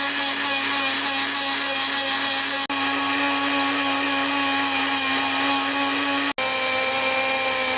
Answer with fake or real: real